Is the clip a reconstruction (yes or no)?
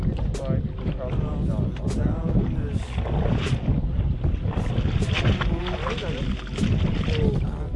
no